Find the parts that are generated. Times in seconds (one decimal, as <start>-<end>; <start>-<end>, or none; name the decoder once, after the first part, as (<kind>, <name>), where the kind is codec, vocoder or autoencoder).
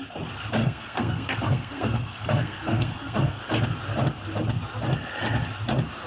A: 0.6-3.4 (codec, SNAC)